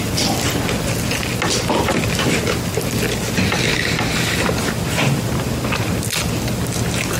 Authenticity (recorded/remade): recorded